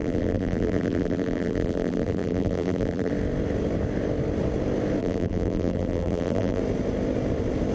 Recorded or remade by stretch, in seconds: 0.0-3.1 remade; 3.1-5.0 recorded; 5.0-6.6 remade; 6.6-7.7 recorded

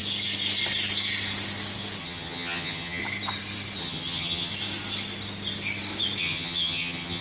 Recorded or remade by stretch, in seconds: 0.0-2.0 recorded; 2.0-3.0 remade; 3.0-3.8 recorded; 3.8-4.5 remade; 4.5-6.2 recorded; 6.2-7.2 remade

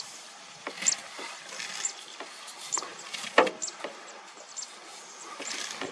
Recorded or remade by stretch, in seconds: 0.0-1.0 recorded; 1.0-2.1 remade; 2.1-2.9 recorded; 2.9-4.5 remade; 4.5-5.9 recorded

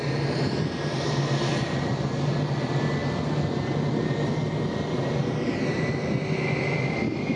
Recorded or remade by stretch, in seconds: 0.0-7.4 recorded

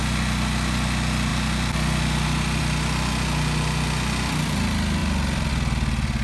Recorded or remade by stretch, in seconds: 0.0-6.2 recorded